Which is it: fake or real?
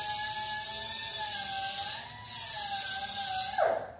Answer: real